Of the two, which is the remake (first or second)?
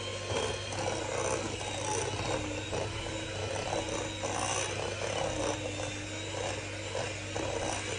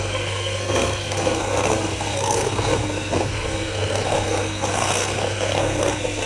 second